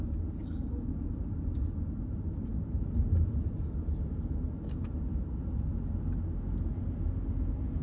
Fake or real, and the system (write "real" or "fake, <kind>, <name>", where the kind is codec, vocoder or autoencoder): real